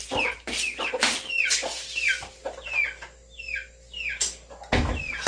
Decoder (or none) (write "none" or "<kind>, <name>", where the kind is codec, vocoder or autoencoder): none